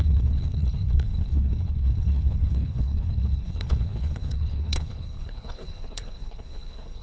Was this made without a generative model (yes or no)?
no